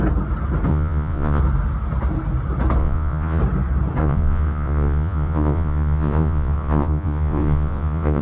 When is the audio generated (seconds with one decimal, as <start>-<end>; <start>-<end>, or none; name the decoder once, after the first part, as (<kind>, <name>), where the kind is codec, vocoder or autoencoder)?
0.7-1.4 (vocoder, Vocos); 2.8-3.4; 4.0-8.2